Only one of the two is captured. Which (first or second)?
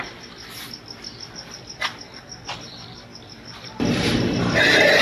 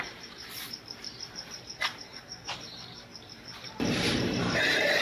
first